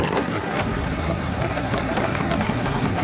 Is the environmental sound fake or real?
fake